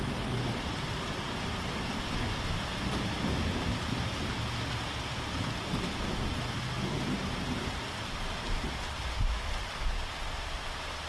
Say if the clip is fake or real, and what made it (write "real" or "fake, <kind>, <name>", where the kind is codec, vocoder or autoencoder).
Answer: real